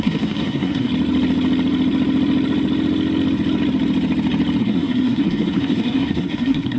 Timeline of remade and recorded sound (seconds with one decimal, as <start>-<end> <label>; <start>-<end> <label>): 0.0-0.9 remade; 0.9-4.6 recorded; 4.6-6.8 remade